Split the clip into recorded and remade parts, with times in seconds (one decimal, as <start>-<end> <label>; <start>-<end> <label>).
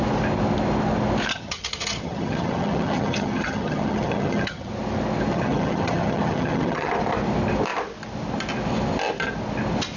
0.0-1.3 recorded; 1.3-4.7 remade; 4.7-5.3 recorded; 5.3-6.9 remade; 6.9-10.0 recorded